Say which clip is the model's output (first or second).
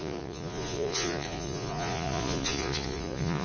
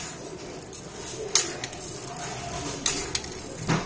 first